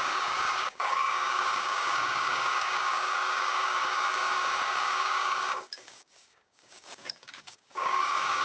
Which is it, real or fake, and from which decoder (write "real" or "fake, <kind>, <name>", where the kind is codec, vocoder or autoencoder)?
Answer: fake, codec, DAC